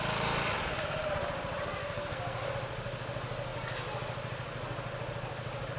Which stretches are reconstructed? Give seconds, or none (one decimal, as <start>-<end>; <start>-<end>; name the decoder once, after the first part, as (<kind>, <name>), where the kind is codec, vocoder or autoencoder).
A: 1.8-2.5 (codec, SNAC)